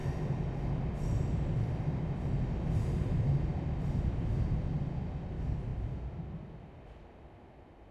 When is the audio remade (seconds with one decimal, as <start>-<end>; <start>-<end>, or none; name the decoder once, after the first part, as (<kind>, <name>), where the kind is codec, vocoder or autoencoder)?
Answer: none